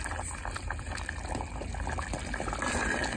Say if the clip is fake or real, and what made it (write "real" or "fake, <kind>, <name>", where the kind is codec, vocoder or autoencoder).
real